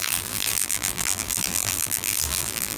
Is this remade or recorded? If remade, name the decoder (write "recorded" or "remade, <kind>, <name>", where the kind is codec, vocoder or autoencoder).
remade, vocoder, BigVGAN v2